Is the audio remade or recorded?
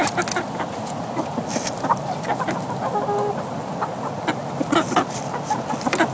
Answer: recorded